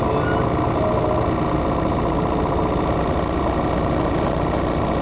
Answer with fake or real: real